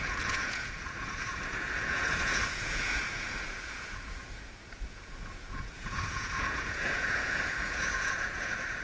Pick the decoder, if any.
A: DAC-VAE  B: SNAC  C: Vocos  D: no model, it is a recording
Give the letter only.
C